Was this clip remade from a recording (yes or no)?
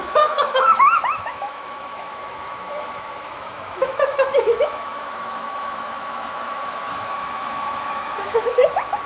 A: yes